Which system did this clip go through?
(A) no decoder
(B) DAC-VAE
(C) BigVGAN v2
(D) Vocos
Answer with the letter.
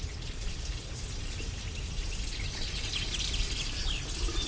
A